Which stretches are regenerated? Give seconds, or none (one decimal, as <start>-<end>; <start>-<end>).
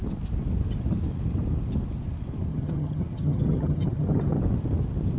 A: 2.5-4.4